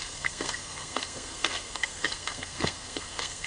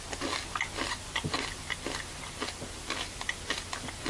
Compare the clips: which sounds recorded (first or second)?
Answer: second